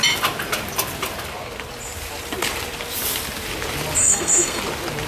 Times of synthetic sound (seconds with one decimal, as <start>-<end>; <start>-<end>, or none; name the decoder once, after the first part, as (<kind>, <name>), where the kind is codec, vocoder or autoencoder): 4.0-4.6 (codec, SNAC)